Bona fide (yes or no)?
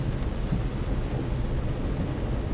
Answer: yes